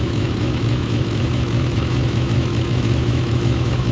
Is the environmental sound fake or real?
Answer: fake